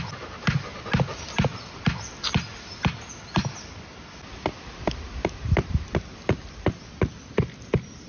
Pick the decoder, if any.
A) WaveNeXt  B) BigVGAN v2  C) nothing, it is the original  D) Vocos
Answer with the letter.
C